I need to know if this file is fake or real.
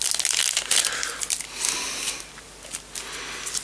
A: real